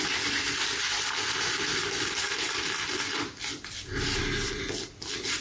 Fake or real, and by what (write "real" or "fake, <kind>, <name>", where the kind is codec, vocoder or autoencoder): real